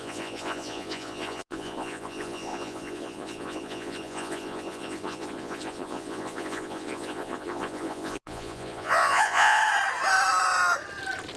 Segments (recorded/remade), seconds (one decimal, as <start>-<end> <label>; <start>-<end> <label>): 0.0-9.6 remade; 9.6-11.4 recorded